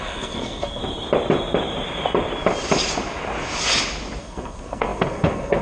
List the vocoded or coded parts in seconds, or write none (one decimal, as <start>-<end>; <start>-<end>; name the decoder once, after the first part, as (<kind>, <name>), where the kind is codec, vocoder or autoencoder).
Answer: 0.0-0.8 (codec, SNAC); 4.2-5.6